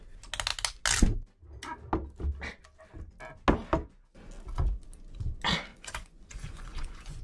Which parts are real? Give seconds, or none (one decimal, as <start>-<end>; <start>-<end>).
0.0-5.7